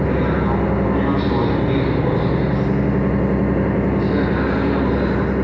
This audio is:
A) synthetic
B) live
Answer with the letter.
B